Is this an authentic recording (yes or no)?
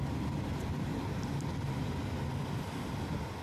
yes